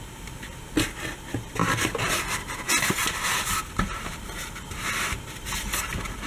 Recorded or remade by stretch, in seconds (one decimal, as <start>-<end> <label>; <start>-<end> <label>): 0.0-6.3 recorded